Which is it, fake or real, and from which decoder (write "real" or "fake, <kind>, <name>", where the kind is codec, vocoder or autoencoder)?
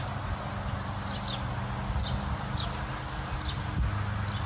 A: real